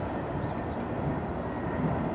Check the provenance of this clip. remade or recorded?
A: recorded